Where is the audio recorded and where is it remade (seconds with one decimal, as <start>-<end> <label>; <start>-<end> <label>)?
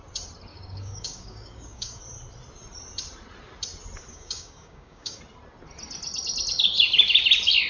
0.0-0.5 recorded; 0.5-2.0 remade; 2.0-4.1 recorded; 4.1-5.2 remade; 5.2-7.7 recorded